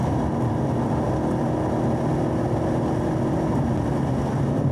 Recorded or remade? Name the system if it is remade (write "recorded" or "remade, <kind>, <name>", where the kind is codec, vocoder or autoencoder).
recorded